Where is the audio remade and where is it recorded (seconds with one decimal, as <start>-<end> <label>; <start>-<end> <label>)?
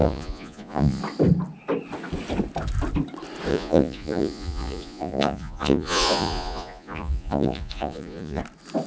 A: 0.0-1.0 remade; 1.0-3.5 recorded; 3.5-8.4 remade; 8.4-8.9 recorded